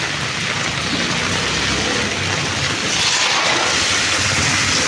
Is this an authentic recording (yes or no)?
yes